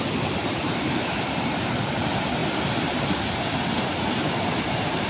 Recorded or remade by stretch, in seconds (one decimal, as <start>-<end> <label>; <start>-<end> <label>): 0.0-0.4 recorded; 0.4-1.7 remade; 1.7-2.4 recorded; 2.4-3.1 remade; 3.1-5.1 recorded